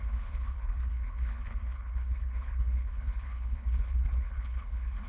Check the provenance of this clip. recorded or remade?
remade